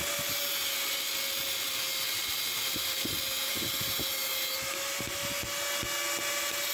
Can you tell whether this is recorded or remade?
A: recorded